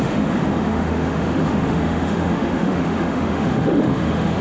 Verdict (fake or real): fake